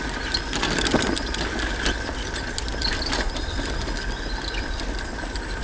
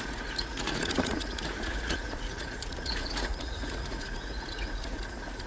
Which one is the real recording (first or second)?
first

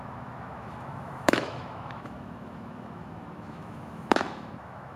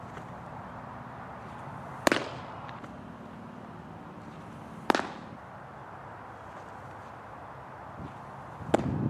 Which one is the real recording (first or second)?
second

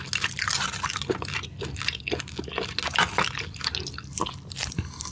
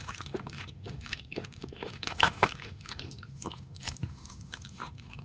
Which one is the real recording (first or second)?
first